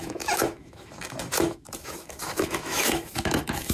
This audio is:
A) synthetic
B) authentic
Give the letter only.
A